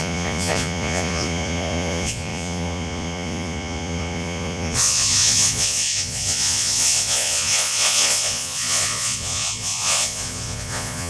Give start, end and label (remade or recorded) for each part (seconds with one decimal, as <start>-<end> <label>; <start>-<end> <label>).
0.0-11.1 remade